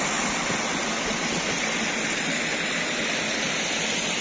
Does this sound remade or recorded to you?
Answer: recorded